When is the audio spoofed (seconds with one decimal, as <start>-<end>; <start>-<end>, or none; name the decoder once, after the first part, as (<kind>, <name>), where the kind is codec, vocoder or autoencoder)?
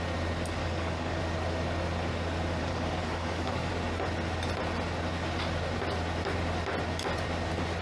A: 0.6-1.2 (codec, DAC); 2.6-3.7